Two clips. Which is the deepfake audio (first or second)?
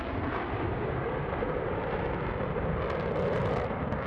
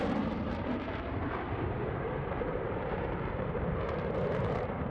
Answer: second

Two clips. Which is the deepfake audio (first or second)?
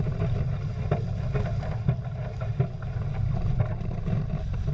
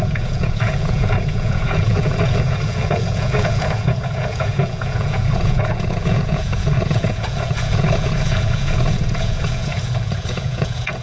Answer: second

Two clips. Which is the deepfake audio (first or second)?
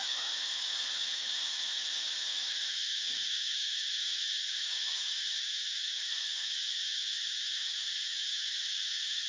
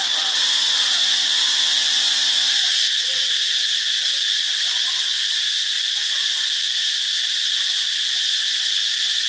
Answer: first